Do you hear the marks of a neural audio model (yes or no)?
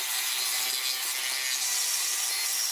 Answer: no